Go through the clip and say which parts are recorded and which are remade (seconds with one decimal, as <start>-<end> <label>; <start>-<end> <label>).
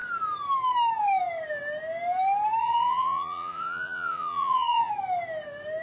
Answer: 0.0-2.6 recorded; 2.6-4.9 remade; 4.9-5.8 recorded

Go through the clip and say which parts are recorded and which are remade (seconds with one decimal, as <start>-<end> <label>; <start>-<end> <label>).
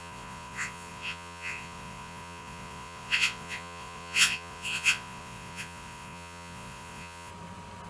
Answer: 0.0-7.3 remade; 7.3-7.9 recorded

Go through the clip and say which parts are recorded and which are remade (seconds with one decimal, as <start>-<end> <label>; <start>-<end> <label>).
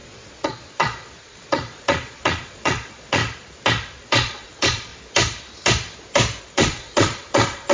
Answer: 0.0-3.2 remade; 3.2-4.0 recorded; 4.0-4.9 remade; 4.9-6.4 recorded; 6.4-7.7 remade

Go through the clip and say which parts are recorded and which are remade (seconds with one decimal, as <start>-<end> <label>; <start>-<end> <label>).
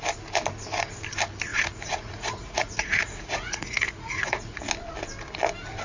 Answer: 0.0-1.5 recorded; 1.5-4.7 remade; 4.7-5.8 recorded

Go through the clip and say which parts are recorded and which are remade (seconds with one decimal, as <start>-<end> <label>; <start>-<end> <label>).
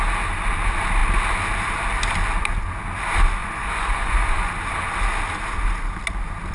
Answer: 0.0-3.4 recorded; 3.4-4.5 remade; 4.5-6.5 recorded